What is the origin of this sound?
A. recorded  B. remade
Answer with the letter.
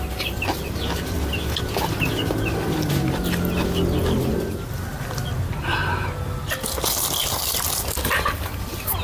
A